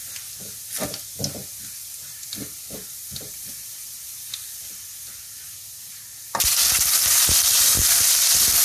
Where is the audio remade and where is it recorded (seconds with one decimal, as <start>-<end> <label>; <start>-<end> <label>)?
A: 0.0-1.6 recorded; 1.6-4.9 remade; 4.9-7.1 recorded; 7.1-8.6 remade